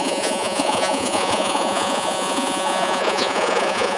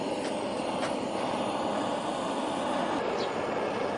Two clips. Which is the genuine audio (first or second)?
second